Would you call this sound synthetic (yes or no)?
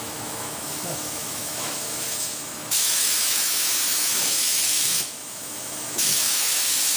yes